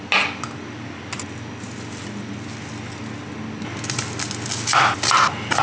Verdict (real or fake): real